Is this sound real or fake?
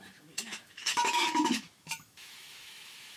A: fake